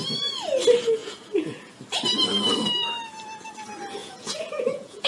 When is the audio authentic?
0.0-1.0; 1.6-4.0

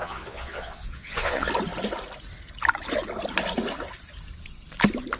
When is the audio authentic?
1.5-5.2

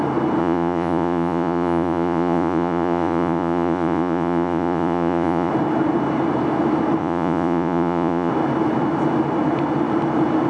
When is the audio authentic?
0.0-0.4; 5.5-7.0; 8.3-10.5

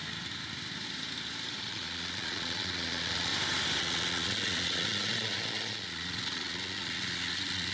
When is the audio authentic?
0.0-1.6; 3.3-3.8

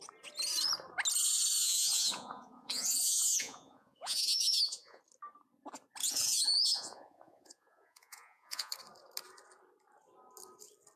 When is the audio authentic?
0.0-1.6; 5.0-6.0; 8.7-11.0

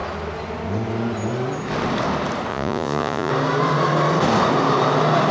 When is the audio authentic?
0.0-2.5; 3.3-5.3